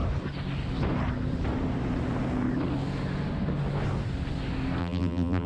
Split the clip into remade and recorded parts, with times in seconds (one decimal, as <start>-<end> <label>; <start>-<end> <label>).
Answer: 0.0-4.8 recorded; 4.8-5.5 remade